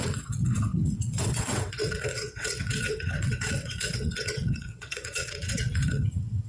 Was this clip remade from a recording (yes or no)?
yes